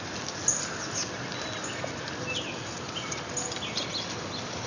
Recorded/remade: recorded